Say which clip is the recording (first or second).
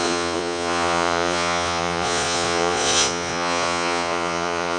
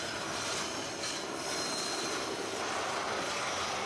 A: second